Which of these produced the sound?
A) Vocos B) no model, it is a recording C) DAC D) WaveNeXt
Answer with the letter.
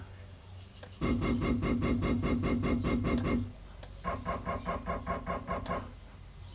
B